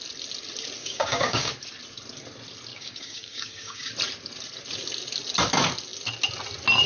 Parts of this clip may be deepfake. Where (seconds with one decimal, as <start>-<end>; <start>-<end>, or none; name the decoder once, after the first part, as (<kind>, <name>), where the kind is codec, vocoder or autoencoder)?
0.8-1.5 (codec, DAC); 2.7-3.9